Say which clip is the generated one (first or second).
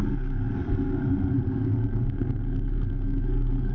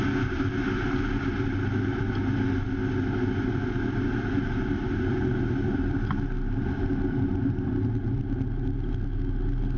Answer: first